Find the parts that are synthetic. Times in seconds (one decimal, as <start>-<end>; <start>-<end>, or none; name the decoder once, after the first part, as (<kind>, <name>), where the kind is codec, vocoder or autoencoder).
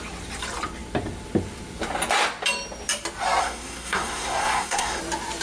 3.4-5.0 (codec, SNAC)